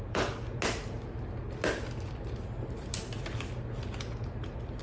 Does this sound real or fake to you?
real